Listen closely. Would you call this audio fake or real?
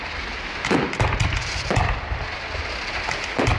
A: real